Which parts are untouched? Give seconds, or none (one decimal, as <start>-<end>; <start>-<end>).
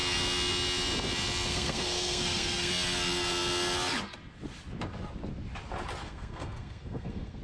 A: 0.0-1.5; 2.7-6.0